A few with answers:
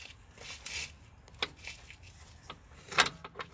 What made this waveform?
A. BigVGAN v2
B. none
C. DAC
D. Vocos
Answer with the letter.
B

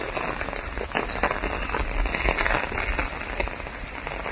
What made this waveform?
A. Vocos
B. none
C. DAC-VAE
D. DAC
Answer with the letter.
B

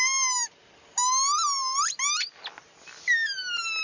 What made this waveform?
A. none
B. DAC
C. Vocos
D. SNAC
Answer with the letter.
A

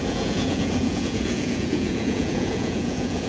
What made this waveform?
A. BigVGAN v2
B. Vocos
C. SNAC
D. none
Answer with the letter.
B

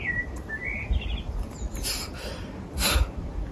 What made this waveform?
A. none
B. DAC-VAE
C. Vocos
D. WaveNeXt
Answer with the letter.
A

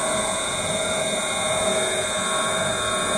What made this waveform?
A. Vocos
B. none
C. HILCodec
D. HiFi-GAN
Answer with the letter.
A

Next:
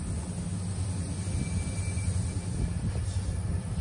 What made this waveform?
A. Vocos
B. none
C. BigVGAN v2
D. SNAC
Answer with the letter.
B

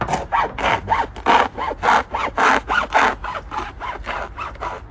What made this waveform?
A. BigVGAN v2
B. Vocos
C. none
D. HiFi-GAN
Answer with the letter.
C